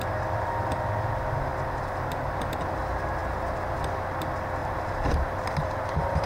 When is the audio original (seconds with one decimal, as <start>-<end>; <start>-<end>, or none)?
0.0-4.6

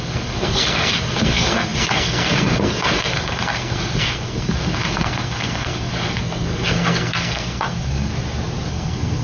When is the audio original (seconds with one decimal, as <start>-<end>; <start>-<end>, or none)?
8.1-8.7

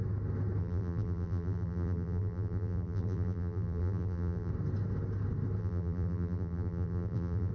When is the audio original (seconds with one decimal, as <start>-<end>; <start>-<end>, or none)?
0.0-0.6; 4.5-5.6

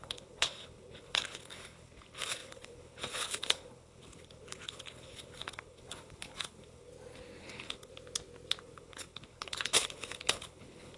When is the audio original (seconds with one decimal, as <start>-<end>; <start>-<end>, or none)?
6.9-7.4; 7.9-8.6

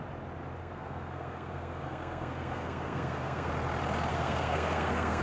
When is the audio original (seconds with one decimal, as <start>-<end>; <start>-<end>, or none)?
0.0-0.6; 3.5-4.1